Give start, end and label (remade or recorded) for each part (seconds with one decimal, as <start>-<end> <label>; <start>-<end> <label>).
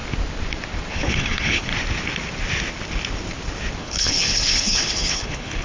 0.0-0.9 recorded; 0.9-1.7 remade; 1.7-3.8 recorded; 3.8-5.6 remade